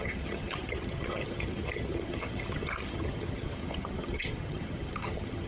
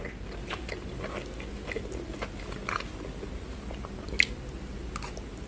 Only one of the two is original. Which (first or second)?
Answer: second